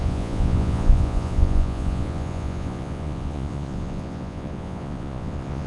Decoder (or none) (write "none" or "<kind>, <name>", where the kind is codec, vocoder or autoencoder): vocoder, Vocos